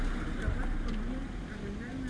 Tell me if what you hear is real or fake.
real